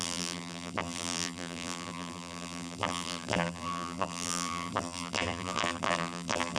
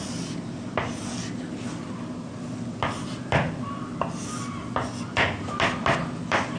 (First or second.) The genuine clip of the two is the second